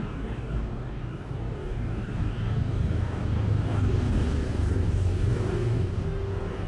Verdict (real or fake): fake